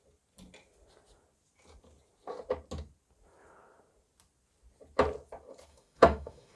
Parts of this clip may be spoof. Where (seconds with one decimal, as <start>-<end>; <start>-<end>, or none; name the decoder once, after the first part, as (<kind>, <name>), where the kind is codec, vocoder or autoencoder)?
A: 5.7-6.6 (autoencoder, DAC-VAE)